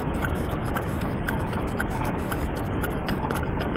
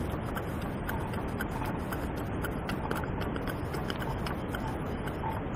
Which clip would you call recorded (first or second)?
second